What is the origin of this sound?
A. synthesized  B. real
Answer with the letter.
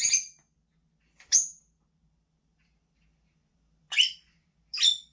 B